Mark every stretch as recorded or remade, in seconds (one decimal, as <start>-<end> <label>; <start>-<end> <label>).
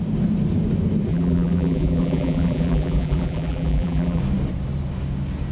0.0-1.1 recorded; 1.1-4.2 remade; 4.2-5.5 recorded